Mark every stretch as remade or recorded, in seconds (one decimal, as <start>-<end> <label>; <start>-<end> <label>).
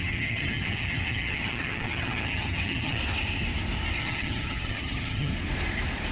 0.0-3.0 remade; 3.0-4.0 recorded; 4.0-5.3 remade; 5.3-6.1 recorded